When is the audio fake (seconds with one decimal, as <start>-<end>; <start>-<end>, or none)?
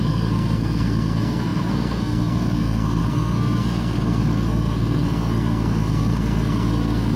0.0-7.2